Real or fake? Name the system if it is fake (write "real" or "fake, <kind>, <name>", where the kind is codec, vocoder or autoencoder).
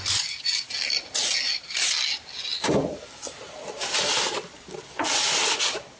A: real